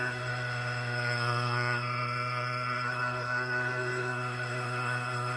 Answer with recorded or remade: remade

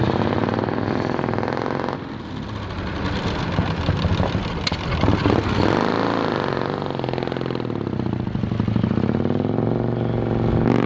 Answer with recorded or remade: recorded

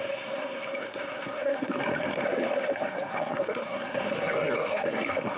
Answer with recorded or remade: remade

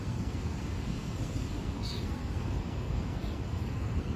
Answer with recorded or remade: remade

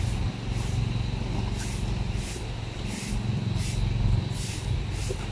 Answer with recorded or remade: recorded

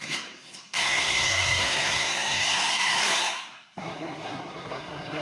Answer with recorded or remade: remade